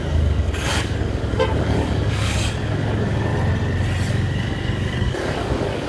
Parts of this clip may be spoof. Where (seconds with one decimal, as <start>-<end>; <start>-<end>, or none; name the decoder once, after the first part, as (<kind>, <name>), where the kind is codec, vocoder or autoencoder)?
0.0-3.3 (codec, DAC); 4.1-5.9